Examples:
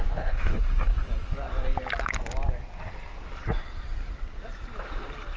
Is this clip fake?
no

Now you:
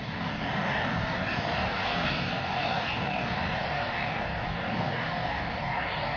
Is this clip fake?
yes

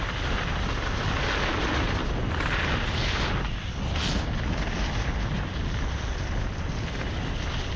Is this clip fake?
no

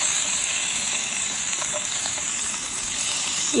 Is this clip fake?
yes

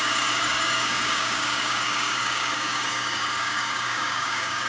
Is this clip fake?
yes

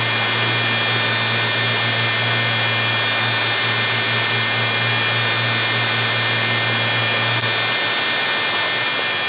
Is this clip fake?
no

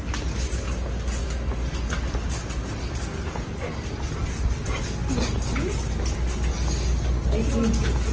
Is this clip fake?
no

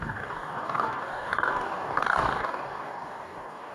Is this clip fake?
yes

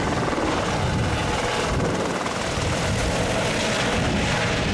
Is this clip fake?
no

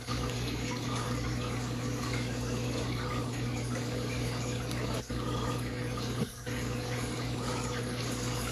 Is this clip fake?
yes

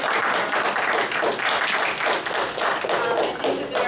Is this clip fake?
no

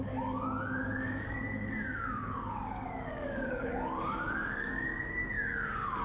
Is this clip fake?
yes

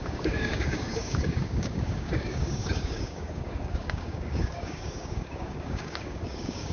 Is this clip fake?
yes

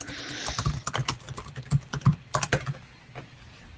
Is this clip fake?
no